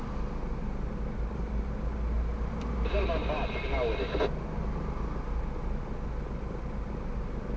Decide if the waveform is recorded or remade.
recorded